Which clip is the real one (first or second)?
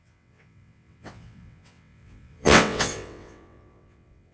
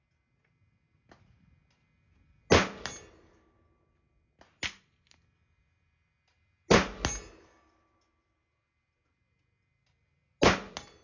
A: second